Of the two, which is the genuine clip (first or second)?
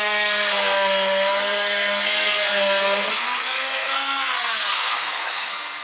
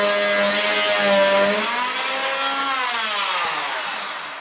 second